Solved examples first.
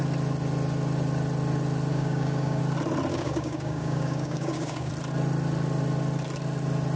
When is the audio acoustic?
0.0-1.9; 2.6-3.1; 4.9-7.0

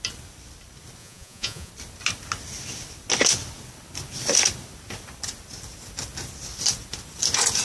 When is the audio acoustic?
0.0-1.0; 1.7-7.6

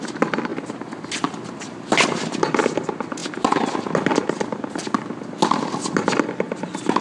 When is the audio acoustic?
0.0-7.0

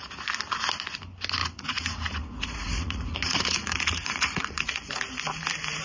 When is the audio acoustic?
0.0-1.4; 4.9-5.8

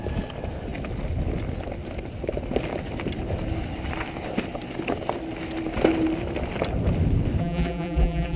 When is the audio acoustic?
0.0-7.4

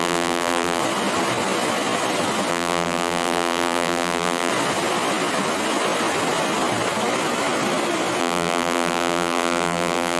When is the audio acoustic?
0.8-2.5; 4.5-8.2